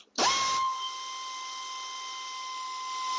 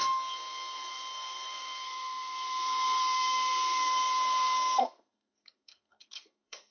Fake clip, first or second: second